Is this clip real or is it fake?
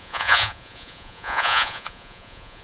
fake